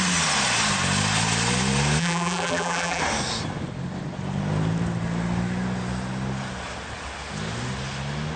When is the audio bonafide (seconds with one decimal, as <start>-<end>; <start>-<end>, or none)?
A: 0.0-2.0; 3.0-8.4